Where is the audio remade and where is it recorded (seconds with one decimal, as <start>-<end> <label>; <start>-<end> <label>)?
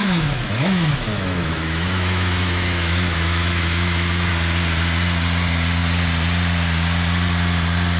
0.0-4.3 remade; 4.3-8.0 recorded